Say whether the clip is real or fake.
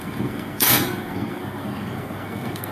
fake